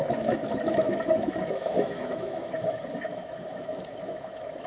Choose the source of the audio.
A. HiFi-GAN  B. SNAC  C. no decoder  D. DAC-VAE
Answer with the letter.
D